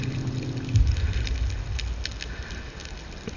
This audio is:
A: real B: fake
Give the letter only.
A